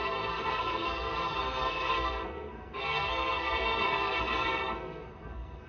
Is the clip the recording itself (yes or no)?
no